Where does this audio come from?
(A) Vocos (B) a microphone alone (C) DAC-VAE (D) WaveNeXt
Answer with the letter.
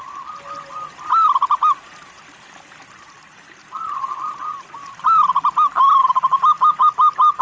B